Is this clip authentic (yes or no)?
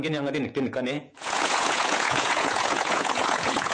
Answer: no